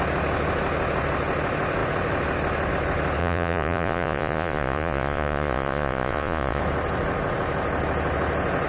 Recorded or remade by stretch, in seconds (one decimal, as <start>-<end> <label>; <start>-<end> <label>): 0.0-3.2 recorded; 3.2-6.6 remade; 6.6-8.7 recorded